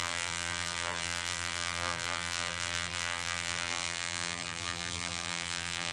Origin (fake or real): fake